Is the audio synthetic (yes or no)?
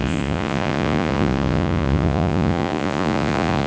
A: yes